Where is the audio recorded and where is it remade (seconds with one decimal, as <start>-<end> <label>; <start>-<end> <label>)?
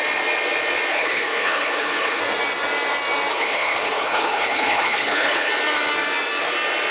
0.0-0.9 recorded; 0.9-2.2 remade; 2.2-3.3 recorded; 3.3-5.5 remade; 5.5-6.9 recorded